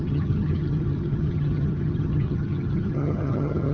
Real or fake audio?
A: fake